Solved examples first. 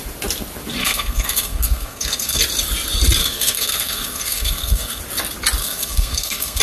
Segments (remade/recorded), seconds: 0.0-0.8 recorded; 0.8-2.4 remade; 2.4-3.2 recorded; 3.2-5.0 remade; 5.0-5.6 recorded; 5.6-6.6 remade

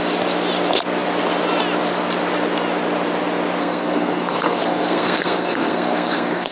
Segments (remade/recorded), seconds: 0.0-3.6 recorded; 3.6-6.5 remade

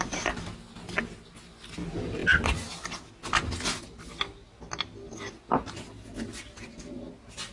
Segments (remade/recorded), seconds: 0.0-7.5 recorded

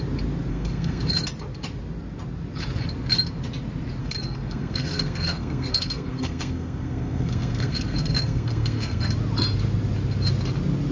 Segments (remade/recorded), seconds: 0.0-0.5 recorded; 0.5-1.0 remade; 1.0-4.0 recorded; 4.0-9.1 remade; 9.1-10.9 recorded

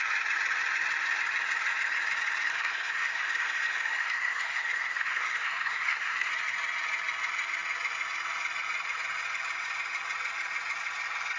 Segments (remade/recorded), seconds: 0.0-2.5 recorded; 2.5-6.3 remade; 6.3-11.4 recorded

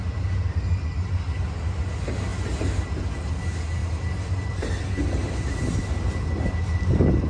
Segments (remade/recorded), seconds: 0.0-7.3 recorded